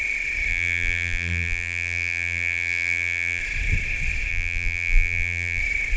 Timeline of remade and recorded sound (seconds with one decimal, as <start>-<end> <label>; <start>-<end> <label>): 0.0-0.5 recorded; 0.5-3.4 remade; 3.4-4.3 recorded; 4.3-5.6 remade; 5.6-6.0 recorded